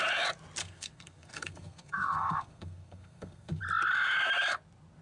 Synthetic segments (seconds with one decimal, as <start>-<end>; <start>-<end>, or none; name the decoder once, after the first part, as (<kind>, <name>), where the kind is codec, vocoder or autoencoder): 0.6-3.6 (codec, SNAC)